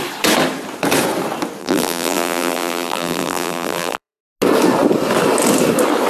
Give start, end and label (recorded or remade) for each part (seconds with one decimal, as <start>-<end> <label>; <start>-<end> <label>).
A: 0.0-1.6 recorded; 1.6-4.2 remade; 4.2-6.1 recorded